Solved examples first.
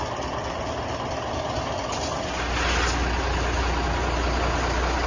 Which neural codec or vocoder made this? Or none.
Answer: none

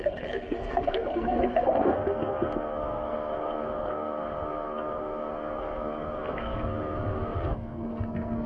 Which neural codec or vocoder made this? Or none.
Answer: codec, SNAC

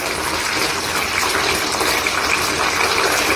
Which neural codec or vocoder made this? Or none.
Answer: none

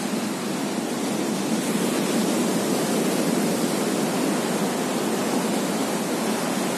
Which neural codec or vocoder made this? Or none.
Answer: none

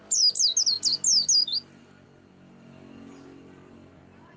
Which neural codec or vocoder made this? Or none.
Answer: none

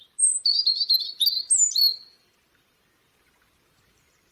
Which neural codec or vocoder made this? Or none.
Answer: none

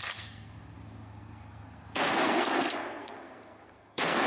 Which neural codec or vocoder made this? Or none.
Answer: codec, SNAC